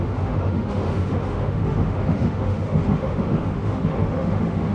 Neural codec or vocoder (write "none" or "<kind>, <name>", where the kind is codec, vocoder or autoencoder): autoencoder, DAC-VAE